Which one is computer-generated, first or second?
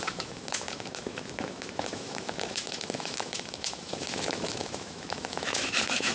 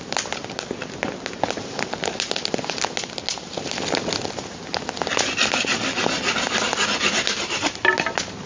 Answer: first